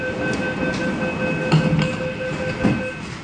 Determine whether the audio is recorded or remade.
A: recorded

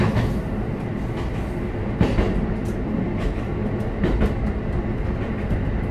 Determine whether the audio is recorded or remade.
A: recorded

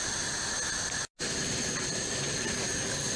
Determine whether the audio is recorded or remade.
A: recorded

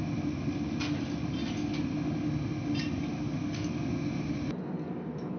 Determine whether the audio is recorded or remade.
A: recorded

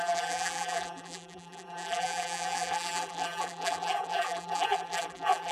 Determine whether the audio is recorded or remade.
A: remade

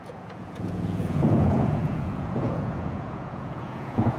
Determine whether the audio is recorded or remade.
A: remade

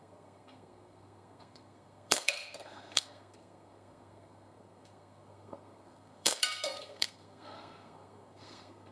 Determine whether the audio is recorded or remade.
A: remade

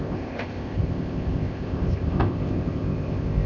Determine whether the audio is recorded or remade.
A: remade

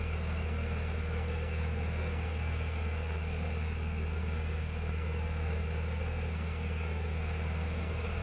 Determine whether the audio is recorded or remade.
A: remade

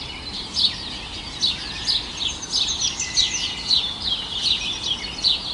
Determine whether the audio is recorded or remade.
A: recorded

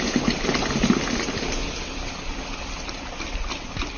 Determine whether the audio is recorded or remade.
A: recorded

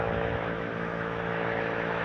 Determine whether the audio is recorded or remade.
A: remade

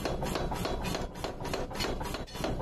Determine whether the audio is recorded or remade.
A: recorded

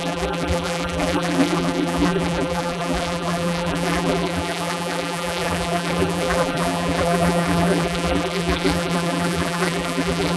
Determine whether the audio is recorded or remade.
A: remade